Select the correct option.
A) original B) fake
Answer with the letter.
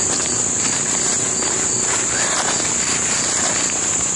A